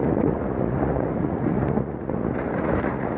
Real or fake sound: fake